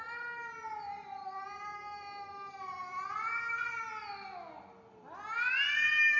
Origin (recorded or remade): recorded